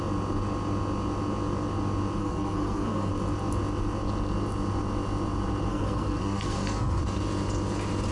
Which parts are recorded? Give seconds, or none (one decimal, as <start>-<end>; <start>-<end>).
0.0-2.2; 3.1-5.7; 7.0-8.1